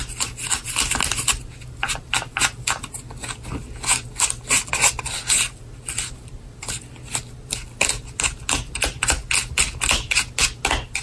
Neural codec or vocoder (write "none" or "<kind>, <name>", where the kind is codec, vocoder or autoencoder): none